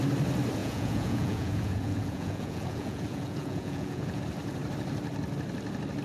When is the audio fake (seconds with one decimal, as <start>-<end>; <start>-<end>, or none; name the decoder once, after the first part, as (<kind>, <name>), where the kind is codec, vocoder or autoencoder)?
0.6-4.2 (vocoder, Vocos)